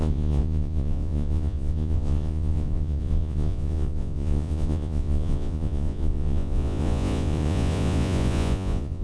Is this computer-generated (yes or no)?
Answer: yes